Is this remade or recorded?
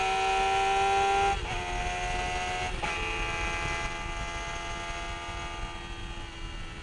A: recorded